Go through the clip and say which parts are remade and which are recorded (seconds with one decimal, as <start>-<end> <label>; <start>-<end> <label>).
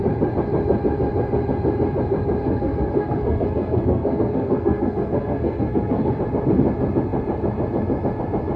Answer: 0.0-2.4 recorded; 2.4-6.2 remade; 6.2-8.6 recorded